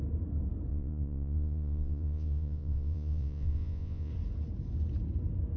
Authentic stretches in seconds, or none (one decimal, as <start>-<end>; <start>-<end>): 0.0-0.7; 4.1-5.6